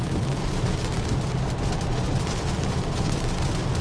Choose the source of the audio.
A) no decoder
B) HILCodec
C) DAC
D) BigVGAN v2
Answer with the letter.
A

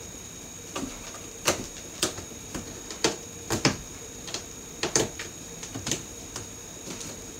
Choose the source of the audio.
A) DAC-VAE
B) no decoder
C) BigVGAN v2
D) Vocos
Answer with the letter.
C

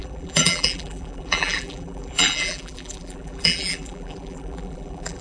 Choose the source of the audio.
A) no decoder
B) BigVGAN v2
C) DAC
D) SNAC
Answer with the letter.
B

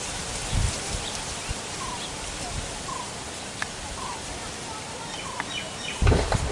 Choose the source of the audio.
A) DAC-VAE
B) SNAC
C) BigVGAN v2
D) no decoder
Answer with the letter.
D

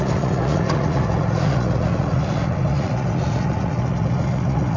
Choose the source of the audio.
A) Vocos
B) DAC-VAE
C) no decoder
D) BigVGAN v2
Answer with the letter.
A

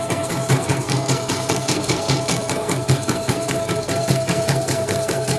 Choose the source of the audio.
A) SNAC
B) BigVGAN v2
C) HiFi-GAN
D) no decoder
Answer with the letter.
A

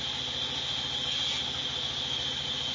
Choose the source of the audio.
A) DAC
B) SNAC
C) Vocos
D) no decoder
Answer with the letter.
D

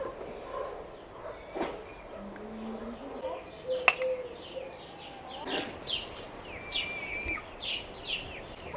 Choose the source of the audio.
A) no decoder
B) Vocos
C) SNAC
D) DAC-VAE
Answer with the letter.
A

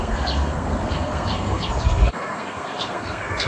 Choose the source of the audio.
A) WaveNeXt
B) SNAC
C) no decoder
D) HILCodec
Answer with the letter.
B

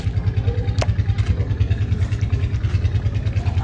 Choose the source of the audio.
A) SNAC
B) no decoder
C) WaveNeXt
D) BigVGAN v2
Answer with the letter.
B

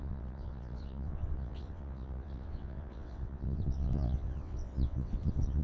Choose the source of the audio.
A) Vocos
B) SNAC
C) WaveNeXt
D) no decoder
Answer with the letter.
C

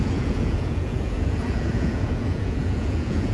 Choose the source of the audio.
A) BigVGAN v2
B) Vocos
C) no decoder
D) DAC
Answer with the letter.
B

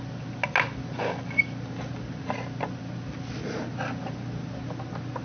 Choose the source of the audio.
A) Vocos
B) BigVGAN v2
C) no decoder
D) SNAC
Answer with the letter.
C